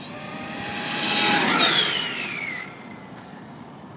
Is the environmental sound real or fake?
real